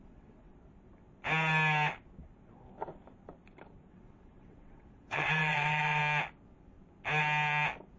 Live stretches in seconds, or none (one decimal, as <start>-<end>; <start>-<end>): 0.5-3.9; 6.0-8.0